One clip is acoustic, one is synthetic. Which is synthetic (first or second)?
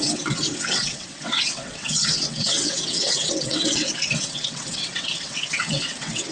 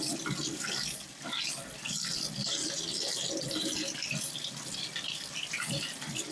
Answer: first